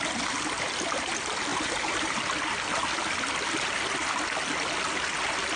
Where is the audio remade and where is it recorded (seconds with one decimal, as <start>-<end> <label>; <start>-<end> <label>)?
0.0-1.5 recorded; 1.5-2.2 remade; 2.2-5.6 recorded